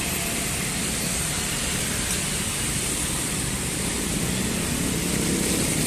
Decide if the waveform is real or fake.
real